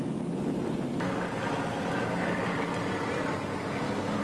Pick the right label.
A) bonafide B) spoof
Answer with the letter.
A